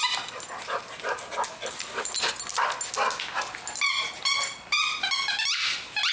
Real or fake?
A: real